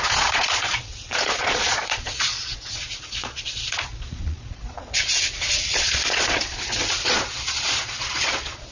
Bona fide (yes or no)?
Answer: no